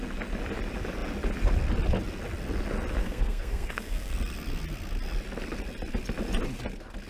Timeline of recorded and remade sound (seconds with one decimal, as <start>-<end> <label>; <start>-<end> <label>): 0.0-3.0 recorded; 3.0-4.1 remade; 4.1-7.1 recorded